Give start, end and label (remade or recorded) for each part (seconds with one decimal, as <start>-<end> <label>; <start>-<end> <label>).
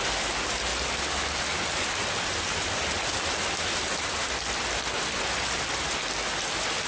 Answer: 0.0-6.9 recorded